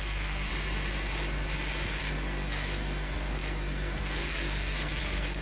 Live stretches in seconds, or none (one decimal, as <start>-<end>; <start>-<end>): 0.5-2.0